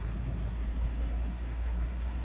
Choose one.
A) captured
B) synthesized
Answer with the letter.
B